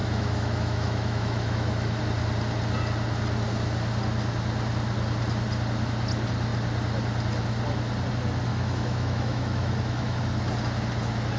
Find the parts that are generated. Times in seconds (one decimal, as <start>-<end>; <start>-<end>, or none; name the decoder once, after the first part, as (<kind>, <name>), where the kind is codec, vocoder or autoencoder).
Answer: 0.0-2.0 (autoencoder, DAC-VAE); 8.5-10.2